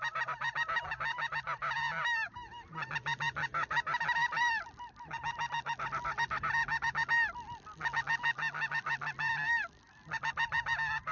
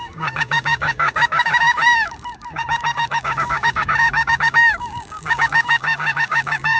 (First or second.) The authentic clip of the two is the first